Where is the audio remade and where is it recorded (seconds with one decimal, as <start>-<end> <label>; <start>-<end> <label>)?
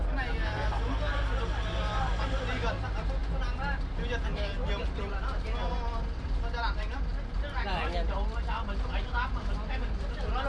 0.0-10.5 recorded